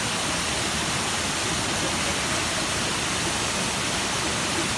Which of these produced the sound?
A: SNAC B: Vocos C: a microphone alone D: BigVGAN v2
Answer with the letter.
D